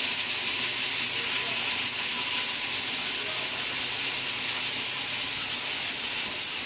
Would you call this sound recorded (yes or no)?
yes